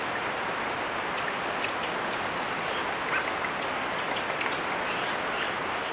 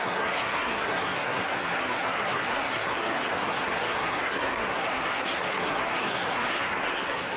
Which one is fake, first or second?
second